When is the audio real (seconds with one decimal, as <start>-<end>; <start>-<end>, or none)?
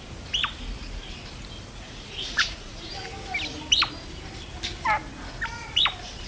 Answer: 0.0-1.7; 2.9-6.3